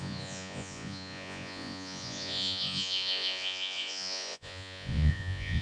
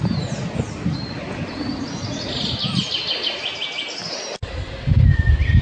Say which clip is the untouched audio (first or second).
second